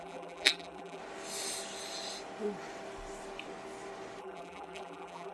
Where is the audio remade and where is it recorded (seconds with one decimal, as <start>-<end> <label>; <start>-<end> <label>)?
0.0-1.0 remade; 1.0-4.2 recorded; 4.2-5.3 remade